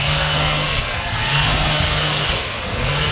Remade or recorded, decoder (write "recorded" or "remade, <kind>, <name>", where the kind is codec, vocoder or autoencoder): remade, codec, SNAC